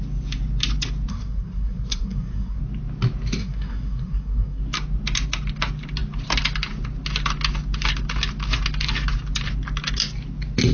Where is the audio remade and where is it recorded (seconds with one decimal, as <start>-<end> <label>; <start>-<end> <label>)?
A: 0.0-1.1 recorded; 1.1-2.6 remade; 2.6-3.4 recorded; 3.4-4.6 remade; 4.6-10.7 recorded